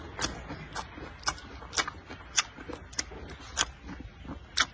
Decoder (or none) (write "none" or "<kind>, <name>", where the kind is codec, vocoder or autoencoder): none